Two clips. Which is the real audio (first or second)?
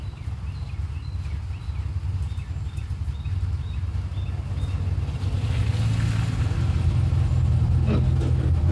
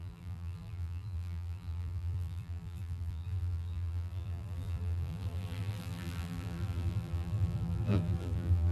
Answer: first